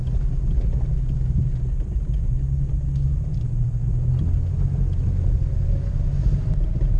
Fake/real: real